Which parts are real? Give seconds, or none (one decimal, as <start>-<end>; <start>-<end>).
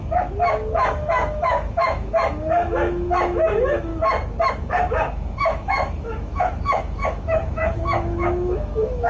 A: 3.9-4.5